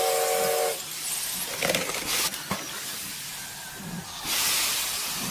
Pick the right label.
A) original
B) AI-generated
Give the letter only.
A